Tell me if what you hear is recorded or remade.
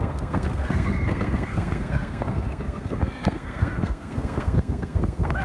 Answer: remade